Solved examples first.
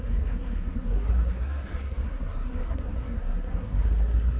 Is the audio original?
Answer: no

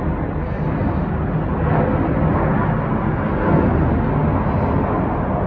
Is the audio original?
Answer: yes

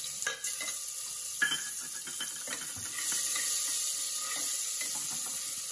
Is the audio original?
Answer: yes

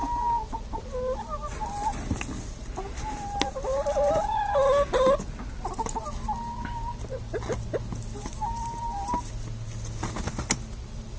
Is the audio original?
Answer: yes